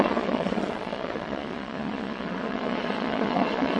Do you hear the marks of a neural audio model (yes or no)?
yes